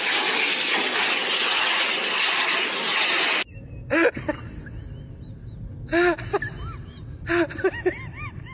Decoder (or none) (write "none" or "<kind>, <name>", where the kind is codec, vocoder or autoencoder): none